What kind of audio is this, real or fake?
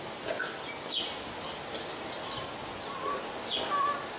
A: real